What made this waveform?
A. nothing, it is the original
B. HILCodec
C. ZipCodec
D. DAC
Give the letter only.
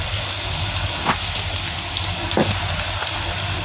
A